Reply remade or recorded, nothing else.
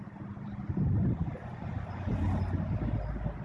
recorded